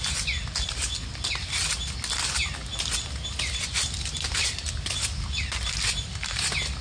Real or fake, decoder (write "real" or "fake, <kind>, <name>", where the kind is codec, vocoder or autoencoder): real